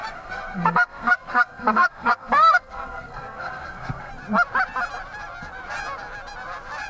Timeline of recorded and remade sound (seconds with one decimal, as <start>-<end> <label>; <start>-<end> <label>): 0.0-4.1 remade; 4.1-6.9 recorded